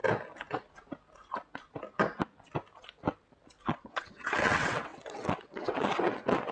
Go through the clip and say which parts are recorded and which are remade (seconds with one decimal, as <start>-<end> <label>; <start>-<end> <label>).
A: 0.0-3.6 recorded; 3.6-6.5 remade